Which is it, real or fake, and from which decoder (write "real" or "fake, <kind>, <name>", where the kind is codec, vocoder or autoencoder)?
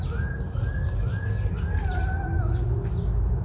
real